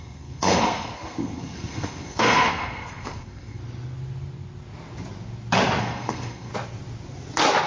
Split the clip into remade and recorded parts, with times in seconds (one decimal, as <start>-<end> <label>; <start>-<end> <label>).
0.0-3.6 remade; 3.6-5.8 recorded; 5.8-6.5 remade; 6.5-7.7 recorded